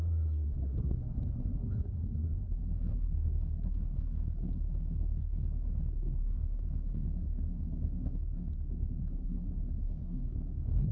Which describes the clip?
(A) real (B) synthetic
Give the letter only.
B